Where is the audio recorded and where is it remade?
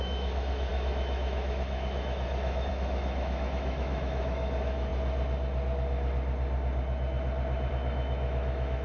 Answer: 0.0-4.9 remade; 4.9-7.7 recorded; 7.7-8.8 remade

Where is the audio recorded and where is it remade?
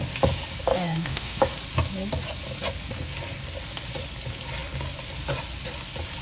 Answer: 0.0-0.7 recorded; 0.7-1.4 remade; 1.4-6.2 recorded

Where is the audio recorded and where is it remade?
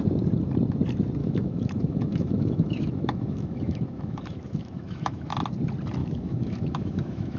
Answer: 0.0-1.2 recorded; 1.2-5.3 remade; 5.3-6.0 recorded; 6.0-7.4 remade